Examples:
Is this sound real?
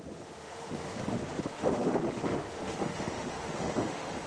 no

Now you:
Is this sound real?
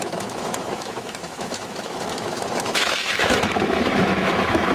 no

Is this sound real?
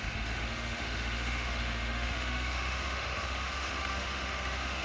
no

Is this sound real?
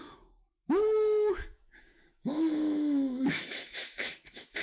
no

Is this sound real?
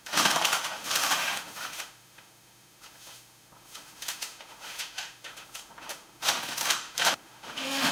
no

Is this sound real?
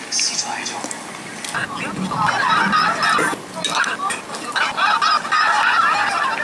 yes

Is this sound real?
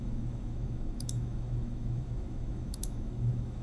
no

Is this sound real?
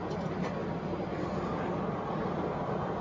yes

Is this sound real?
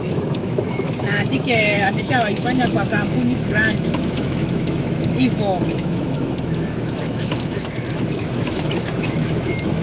no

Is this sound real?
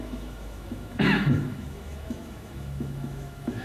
no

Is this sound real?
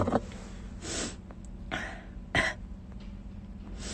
yes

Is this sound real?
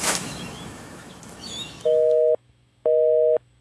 no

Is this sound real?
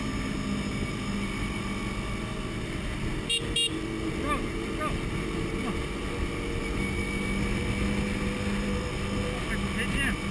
yes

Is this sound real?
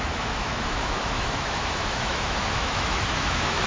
no